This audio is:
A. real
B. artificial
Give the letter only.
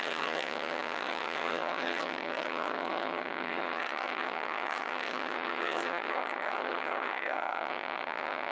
B